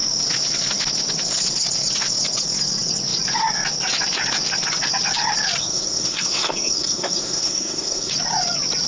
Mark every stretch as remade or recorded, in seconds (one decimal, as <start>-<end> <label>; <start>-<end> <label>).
0.0-5.6 recorded; 5.6-8.1 remade; 8.1-8.9 recorded